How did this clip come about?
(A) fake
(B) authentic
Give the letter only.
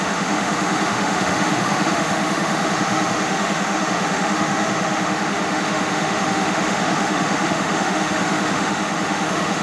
A